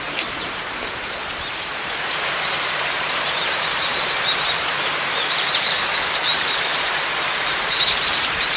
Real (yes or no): no